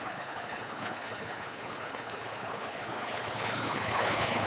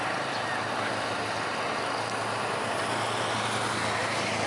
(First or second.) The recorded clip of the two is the second